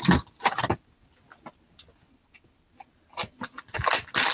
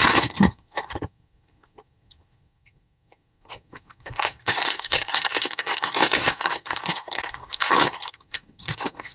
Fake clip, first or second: second